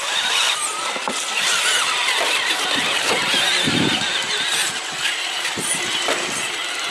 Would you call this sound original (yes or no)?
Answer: yes